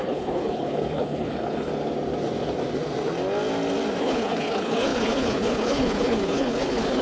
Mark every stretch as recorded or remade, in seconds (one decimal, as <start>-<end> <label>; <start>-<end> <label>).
0.0-1.7 remade; 1.7-4.0 recorded; 4.0-7.0 remade